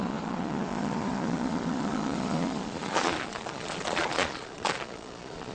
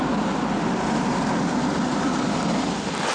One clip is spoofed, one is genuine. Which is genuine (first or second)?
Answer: second